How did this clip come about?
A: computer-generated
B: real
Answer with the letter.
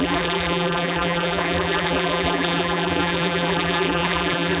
A